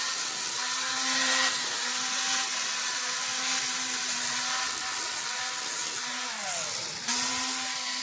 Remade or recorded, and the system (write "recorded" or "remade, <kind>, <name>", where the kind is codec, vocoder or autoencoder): recorded